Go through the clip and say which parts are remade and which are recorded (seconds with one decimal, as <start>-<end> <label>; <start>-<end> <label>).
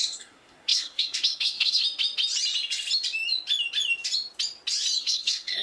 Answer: 0.0-1.8 remade; 1.8-5.0 recorded; 5.0-5.6 remade